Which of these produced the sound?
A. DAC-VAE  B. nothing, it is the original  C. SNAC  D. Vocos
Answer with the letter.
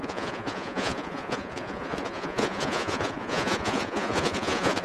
D